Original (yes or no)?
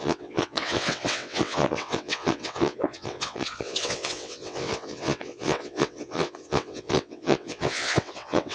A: no